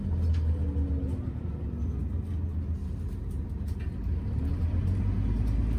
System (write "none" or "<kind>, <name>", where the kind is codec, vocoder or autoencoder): none